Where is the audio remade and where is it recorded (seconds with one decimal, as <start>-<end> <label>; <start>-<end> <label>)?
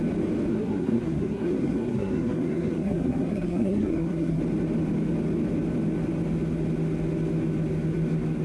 0.0-0.5 recorded; 0.5-4.4 remade; 4.4-8.4 recorded